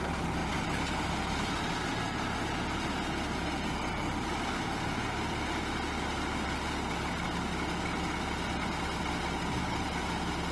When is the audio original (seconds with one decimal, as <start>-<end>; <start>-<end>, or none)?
0.0-10.5